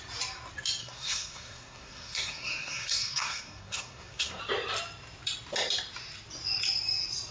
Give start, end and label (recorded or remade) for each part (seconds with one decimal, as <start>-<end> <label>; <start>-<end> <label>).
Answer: 0.0-0.8 recorded; 0.8-4.4 remade; 4.4-7.3 recorded